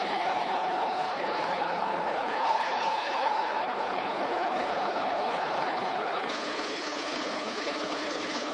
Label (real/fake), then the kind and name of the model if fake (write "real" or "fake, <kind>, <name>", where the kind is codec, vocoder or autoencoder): fake, codec, HILCodec